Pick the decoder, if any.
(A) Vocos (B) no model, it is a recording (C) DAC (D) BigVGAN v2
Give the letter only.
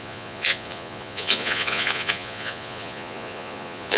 A